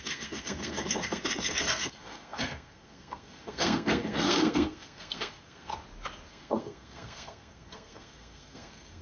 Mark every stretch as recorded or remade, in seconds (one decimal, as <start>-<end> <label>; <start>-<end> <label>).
0.0-5.7 remade; 5.7-6.3 recorded; 6.3-9.0 remade

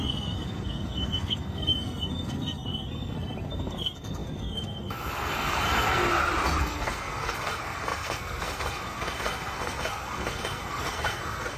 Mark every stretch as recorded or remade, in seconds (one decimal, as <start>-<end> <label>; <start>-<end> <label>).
0.0-6.1 remade; 6.1-6.6 recorded; 6.6-11.6 remade

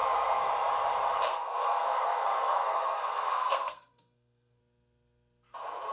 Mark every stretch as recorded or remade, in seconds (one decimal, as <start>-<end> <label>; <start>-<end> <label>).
0.0-0.5 remade; 0.5-1.3 recorded; 1.3-4.6 remade; 4.6-5.9 recorded

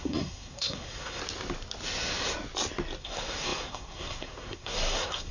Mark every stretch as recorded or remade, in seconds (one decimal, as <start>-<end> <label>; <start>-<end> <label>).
0.0-1.2 remade; 1.2-3.0 recorded; 3.0-5.3 remade

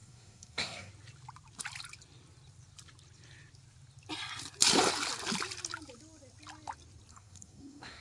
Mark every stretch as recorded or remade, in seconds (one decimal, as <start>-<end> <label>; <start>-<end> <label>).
0.0-0.9 remade; 0.9-7.1 recorded; 7.1-8.0 remade

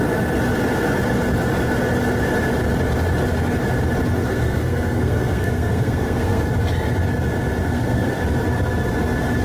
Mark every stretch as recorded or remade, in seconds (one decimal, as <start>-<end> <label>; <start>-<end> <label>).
0.0-4.2 recorded; 4.2-6.4 remade; 6.4-7.6 recorded; 7.6-8.2 remade; 8.2-9.4 recorded

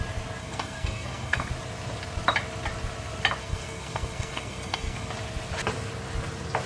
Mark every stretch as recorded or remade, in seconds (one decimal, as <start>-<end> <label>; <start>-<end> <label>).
0.0-0.4 recorded; 0.4-1.5 remade; 1.5-3.4 recorded; 3.4-5.1 remade; 5.1-6.7 recorded

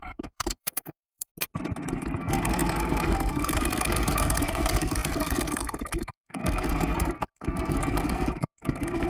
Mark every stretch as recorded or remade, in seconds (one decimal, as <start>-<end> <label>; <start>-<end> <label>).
0.0-1.3 remade; 1.3-1.9 recorded; 1.9-9.1 remade